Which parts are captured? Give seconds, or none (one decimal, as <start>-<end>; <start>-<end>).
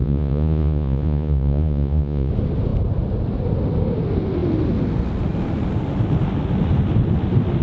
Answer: 2.3-7.6